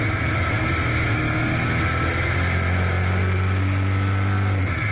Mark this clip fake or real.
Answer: real